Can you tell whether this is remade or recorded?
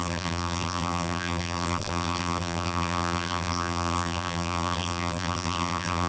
remade